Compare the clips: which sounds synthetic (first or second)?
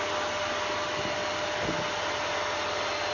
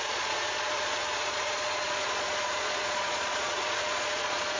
second